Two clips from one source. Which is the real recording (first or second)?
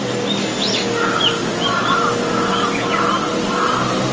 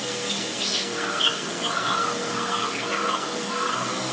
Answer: first